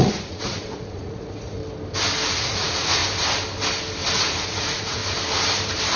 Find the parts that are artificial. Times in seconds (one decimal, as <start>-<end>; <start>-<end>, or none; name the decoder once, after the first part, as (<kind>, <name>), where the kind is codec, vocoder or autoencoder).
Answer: 0.0-1.6 (vocoder, Vocos); 2.3-3.0; 4.1-5.0